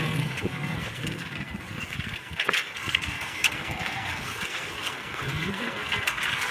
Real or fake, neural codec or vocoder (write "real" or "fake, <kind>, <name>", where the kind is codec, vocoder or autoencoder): fake, codec, SNAC